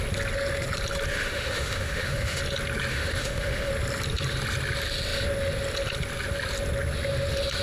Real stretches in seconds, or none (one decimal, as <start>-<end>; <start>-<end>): 0.0-1.1; 2.4-2.9; 3.7-7.6